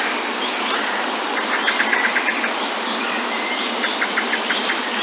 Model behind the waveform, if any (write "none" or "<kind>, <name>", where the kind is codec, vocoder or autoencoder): vocoder, BigVGAN v2